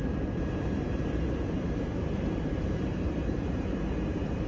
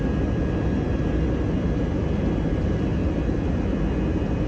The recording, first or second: second